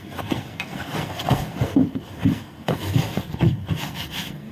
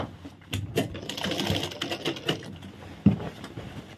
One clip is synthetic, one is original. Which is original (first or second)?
second